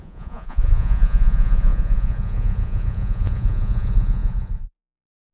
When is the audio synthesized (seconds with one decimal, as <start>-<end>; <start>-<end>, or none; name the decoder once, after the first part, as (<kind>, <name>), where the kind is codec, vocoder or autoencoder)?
0.0-5.3 (vocoder, Vocos)